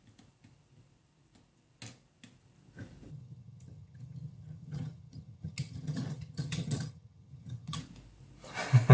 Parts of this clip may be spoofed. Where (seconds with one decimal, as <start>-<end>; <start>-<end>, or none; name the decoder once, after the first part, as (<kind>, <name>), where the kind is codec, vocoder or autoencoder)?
3.1-7.8 (vocoder, HiFi-GAN)